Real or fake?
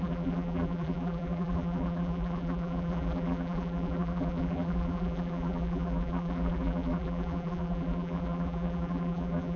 fake